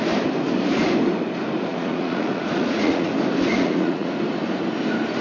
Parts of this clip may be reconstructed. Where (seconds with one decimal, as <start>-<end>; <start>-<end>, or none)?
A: 1.7-3.1; 3.5-4.1